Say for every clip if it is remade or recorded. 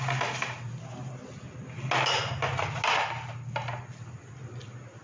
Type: recorded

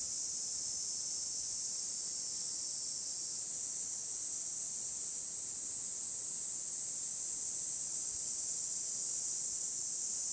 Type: recorded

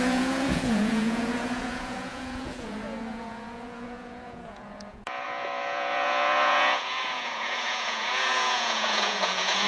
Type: remade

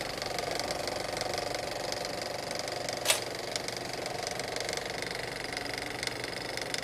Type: recorded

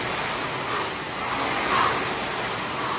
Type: recorded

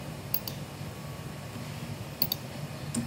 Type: recorded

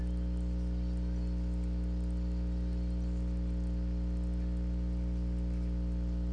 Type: recorded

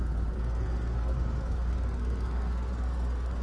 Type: remade